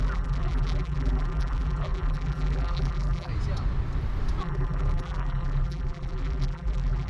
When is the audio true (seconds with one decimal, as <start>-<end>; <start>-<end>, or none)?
3.3-4.4